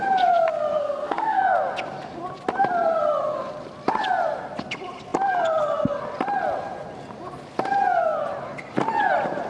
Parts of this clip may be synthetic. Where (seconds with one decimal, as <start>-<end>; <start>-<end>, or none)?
0.8-1.4